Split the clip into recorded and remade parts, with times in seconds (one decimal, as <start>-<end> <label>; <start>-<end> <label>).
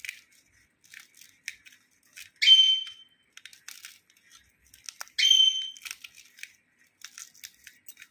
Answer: 0.0-8.1 recorded